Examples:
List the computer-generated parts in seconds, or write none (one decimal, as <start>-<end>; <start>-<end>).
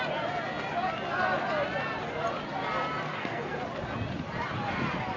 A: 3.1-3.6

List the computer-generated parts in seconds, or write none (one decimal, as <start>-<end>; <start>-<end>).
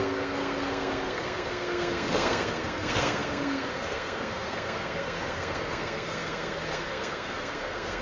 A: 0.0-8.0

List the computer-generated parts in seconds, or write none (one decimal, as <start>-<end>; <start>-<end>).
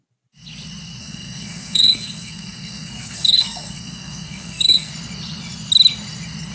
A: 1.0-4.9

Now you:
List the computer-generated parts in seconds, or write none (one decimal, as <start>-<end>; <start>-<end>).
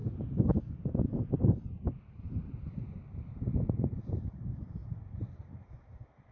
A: 1.7-6.3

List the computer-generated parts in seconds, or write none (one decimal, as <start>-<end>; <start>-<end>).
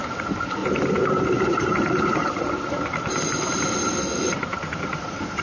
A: 0.6-3.2; 4.4-5.4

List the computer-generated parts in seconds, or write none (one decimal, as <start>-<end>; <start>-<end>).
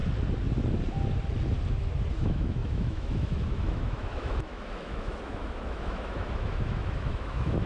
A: 2.1-7.7